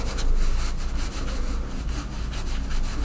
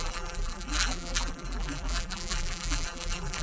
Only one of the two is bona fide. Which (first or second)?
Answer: first